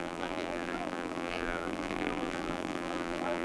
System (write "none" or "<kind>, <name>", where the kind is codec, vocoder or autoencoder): vocoder, BigVGAN v2